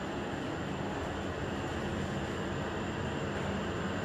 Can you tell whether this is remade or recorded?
recorded